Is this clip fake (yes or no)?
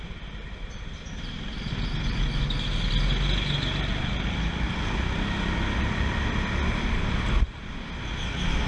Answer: no